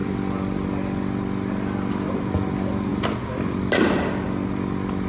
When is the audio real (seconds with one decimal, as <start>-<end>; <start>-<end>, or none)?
0.0-5.1